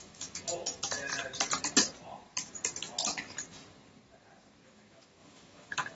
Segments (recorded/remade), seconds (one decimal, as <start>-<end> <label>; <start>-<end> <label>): 0.0-1.1 remade; 1.1-4.7 recorded; 4.7-6.0 remade